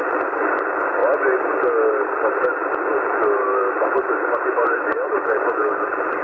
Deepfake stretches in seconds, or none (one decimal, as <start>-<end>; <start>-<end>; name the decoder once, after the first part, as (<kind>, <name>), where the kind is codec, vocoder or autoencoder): none